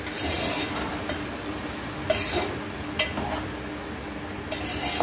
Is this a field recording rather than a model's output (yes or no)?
yes